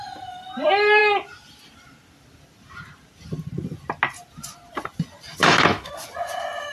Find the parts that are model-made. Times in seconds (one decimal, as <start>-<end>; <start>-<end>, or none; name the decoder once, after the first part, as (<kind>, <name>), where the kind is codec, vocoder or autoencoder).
5.4-5.9 (autoencoder, DAC-VAE)